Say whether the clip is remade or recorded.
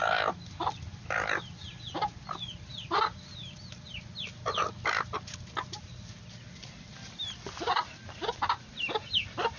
recorded